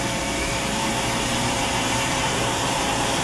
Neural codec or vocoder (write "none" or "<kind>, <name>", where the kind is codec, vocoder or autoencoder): vocoder, BigVGAN v2